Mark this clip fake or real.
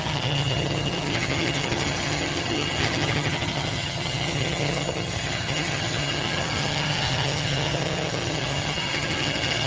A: fake